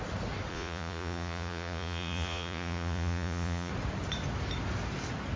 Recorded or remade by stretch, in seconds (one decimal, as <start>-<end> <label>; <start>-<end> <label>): 0.0-0.5 recorded; 0.5-3.7 remade; 3.7-5.4 recorded